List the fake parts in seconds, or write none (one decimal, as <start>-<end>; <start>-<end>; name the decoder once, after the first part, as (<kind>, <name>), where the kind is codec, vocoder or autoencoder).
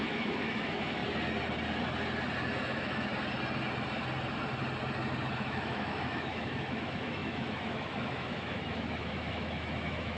0.0-1.0 (autoencoder, DAC-VAE); 2.6-3.1; 5.3-10.2